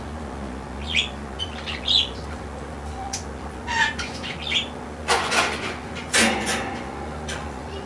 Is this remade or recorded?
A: remade